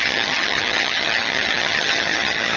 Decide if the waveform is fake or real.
fake